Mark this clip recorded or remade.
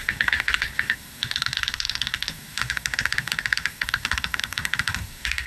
remade